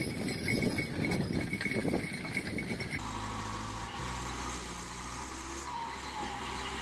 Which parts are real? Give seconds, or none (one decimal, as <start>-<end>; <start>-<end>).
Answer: 0.0-6.8